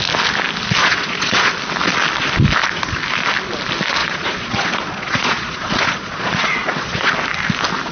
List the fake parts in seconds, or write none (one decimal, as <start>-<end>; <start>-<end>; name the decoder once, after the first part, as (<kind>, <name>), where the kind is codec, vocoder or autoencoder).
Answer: 0.8-1.5 (vocoder, Vocos); 4.0-7.1

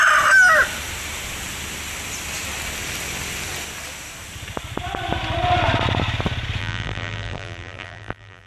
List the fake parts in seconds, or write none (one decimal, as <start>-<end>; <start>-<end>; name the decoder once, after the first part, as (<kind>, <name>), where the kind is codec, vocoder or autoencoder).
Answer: 6.6-8.5 (vocoder, BigVGAN v2)